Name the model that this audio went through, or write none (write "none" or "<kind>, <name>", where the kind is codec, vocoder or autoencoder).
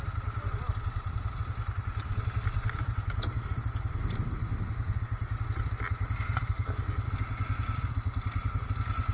none